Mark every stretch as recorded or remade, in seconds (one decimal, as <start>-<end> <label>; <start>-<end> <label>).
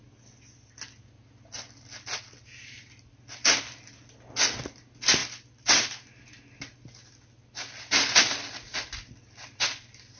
0.0-10.2 recorded